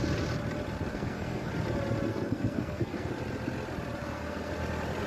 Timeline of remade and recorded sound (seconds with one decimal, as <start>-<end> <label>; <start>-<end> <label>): 0.0-0.9 recorded; 0.9-1.5 remade; 1.5-2.1 recorded; 2.1-3.1 remade; 3.1-4.0 recorded; 4.0-4.5 remade; 4.5-5.1 recorded